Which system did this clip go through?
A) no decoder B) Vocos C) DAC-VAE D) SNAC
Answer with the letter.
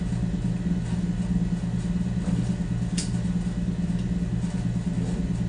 A